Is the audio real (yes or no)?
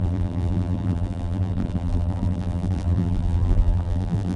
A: no